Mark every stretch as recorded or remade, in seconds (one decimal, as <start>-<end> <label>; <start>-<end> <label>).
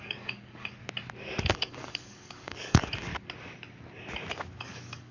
0.0-0.8 remade; 0.8-1.4 recorded; 1.4-3.1 remade; 3.1-4.6 recorded; 4.6-5.1 remade